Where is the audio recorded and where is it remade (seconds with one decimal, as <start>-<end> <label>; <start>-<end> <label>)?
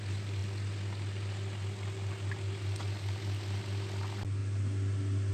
0.0-5.3 recorded